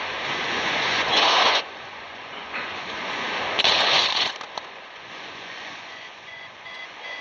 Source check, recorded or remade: remade